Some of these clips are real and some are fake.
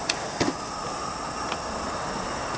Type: real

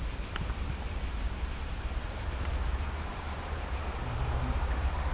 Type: fake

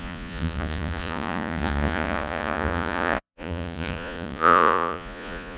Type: fake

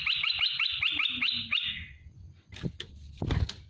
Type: fake